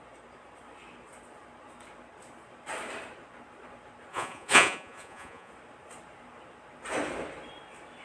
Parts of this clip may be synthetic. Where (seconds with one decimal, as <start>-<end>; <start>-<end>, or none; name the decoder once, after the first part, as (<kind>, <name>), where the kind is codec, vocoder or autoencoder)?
4.1-5.5 (vocoder, Vocos)